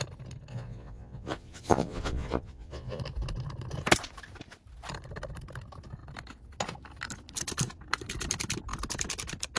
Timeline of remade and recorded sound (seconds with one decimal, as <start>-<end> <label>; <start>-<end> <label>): 0.0-0.5 recorded; 0.5-3.0 remade; 3.0-9.6 recorded